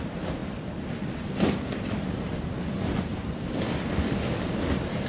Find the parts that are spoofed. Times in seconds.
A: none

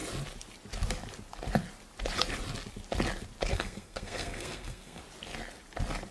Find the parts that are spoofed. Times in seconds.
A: 3.5-5.0

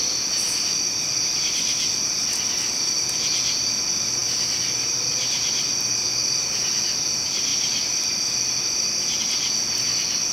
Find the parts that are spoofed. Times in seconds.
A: none

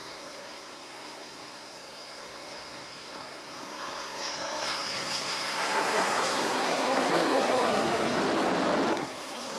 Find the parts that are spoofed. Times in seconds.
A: 0.0-8.2; 8.9-9.6

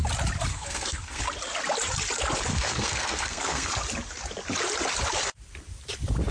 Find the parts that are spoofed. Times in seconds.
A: 0.5-1.2; 2.5-3.7

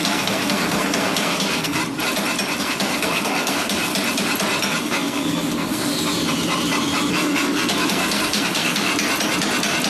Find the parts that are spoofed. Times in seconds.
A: 0.0-1.8; 2.6-3.9; 4.8-5.9; 7.1-8.9